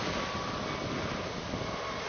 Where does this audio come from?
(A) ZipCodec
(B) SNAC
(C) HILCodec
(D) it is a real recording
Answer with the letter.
D